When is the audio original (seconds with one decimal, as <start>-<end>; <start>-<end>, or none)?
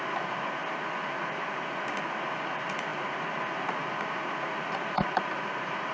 none